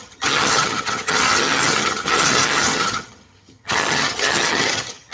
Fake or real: fake